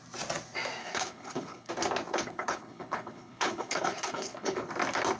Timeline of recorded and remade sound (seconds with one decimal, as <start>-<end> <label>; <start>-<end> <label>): 0.0-0.8 recorded; 0.8-1.7 remade; 1.7-2.1 recorded; 2.1-4.7 remade; 4.7-5.2 recorded